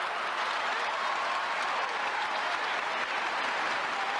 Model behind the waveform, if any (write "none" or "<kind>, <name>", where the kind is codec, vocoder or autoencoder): none